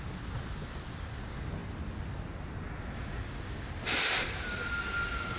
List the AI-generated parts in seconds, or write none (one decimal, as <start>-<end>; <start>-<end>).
none